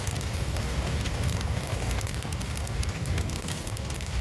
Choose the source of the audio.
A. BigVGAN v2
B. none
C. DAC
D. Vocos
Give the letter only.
C